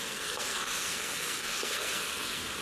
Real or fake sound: fake